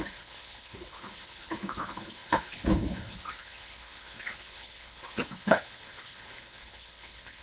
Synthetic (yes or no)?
yes